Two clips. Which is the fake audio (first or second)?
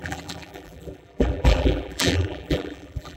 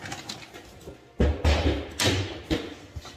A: first